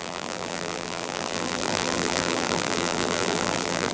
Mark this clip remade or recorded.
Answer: remade